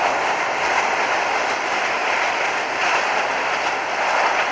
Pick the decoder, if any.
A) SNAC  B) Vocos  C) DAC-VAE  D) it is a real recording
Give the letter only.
D